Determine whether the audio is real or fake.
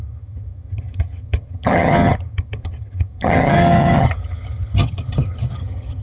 fake